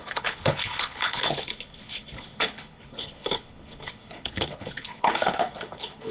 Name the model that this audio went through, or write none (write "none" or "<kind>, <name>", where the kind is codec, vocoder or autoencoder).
codec, HILCodec